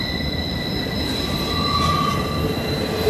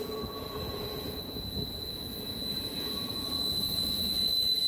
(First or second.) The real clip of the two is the first